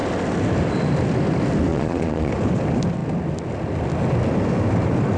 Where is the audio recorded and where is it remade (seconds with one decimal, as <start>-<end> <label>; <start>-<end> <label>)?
0.0-1.7 recorded; 1.7-2.3 remade; 2.3-5.2 recorded